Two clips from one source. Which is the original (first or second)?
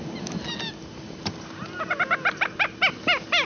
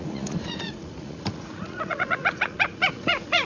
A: first